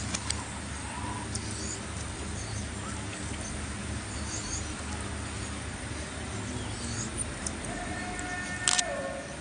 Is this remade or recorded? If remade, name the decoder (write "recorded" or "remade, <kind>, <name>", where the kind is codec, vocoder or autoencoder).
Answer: recorded